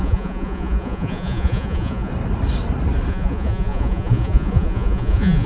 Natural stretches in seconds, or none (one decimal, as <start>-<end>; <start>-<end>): 2.1-3.1